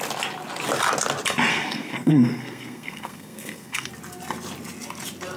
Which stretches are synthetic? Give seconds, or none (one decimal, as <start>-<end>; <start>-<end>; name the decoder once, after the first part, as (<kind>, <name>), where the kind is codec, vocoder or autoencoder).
1.5-3.9 (codec, SNAC)

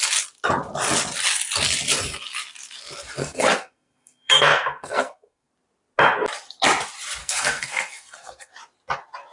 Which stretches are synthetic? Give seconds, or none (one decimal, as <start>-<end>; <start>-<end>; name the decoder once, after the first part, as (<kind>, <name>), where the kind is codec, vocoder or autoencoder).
3.2-5.5 (codec, SNAC); 7.2-8.5

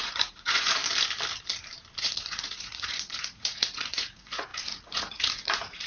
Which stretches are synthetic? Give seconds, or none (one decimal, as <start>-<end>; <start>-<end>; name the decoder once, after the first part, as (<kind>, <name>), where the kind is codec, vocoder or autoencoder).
0.0-0.8 (vocoder, Vocos); 2.0-5.9

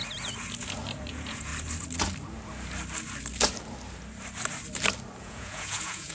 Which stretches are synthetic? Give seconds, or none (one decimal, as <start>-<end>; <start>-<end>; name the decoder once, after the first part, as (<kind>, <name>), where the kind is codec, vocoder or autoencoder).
1.1-1.5 (vocoder, Vocos); 5.2-6.1

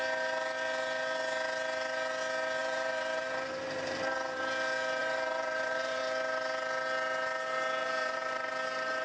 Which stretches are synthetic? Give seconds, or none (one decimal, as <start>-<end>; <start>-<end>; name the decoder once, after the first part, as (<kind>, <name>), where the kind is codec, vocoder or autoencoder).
2.6-4.4 (vocoder, BigVGAN v2); 5.0-6.0; 7.8-8.5